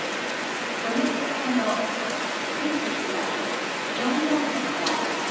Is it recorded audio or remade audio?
remade